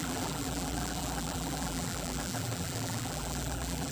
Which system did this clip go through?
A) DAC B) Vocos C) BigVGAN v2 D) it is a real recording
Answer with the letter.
C